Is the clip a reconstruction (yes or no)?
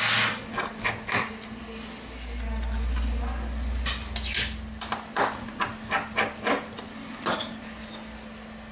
no